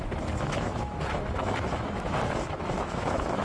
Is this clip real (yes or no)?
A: no